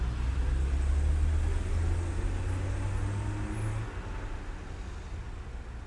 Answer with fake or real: real